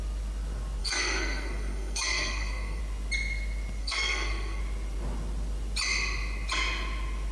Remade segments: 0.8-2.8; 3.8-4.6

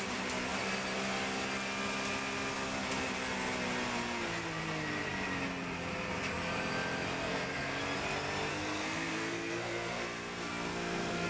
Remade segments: 7.2-7.8; 8.5-11.3

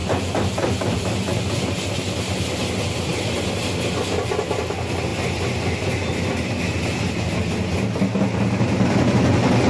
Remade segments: 0.0-1.6

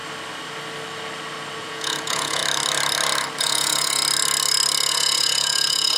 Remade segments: 1.6-2.4; 3.4-4.0; 4.9-6.0